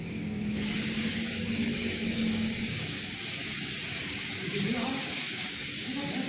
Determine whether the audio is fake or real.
fake